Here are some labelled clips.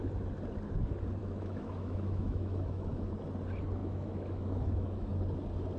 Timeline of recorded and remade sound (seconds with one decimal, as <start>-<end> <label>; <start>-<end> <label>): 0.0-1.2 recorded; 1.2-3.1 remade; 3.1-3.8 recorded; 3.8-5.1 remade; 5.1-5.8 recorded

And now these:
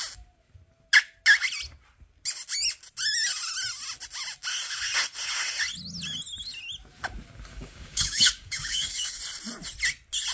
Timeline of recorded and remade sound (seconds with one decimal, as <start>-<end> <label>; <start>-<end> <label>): 0.0-7.5 recorded; 7.5-9.2 remade; 9.2-10.3 recorded

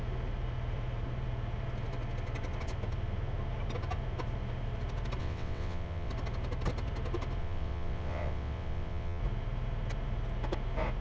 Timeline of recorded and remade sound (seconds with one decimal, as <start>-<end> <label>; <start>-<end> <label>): 0.0-5.2 recorded; 5.2-6.1 remade; 6.1-7.4 recorded; 7.4-9.2 remade; 9.2-11.0 recorded

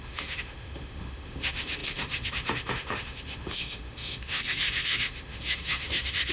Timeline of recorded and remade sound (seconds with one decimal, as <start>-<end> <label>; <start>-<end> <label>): 0.0-6.3 remade